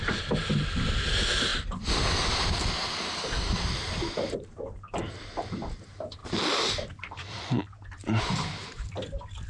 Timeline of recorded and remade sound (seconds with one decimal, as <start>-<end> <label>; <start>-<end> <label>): 0.0-9.5 recorded